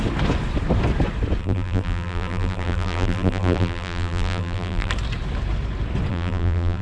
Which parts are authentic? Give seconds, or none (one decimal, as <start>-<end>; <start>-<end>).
0.0-1.4; 4.9-6.1